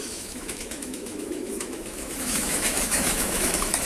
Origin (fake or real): fake